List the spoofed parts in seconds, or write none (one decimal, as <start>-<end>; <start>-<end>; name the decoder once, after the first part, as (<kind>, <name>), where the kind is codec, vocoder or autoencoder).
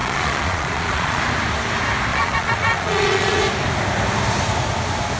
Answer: 0.0-1.2 (vocoder, Vocos); 2.1-3.4